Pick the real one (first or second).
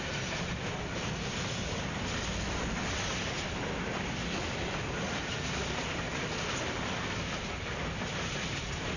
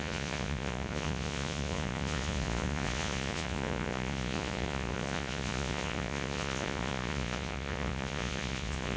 first